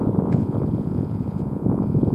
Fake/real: fake